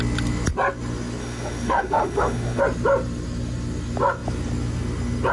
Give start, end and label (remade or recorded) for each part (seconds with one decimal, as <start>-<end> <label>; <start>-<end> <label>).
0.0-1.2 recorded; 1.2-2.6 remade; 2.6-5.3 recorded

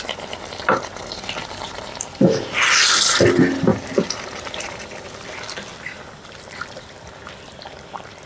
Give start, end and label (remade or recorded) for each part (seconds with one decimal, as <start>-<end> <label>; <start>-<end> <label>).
0.0-3.7 recorded; 3.7-8.3 remade

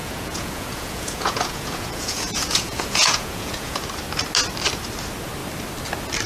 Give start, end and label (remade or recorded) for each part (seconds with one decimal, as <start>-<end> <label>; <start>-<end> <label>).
0.0-3.8 remade; 3.8-6.3 recorded